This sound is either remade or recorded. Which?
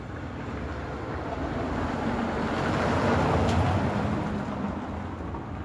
recorded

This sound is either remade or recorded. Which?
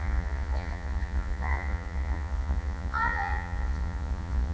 remade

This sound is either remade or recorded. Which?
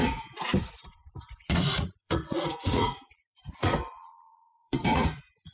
remade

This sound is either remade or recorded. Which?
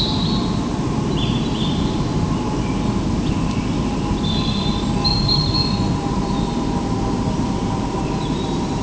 recorded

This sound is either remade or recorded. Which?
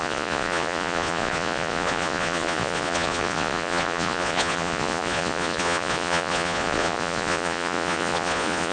remade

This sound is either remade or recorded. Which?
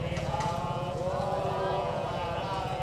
remade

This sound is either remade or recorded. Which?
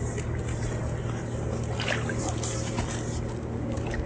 recorded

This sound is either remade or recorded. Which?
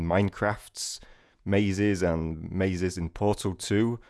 remade